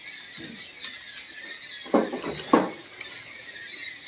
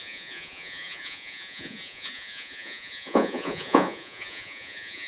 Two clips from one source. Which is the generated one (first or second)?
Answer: second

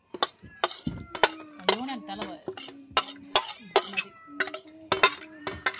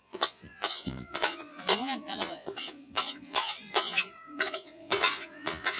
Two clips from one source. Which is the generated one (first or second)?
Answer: second